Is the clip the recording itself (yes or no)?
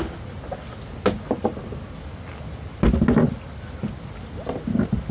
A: yes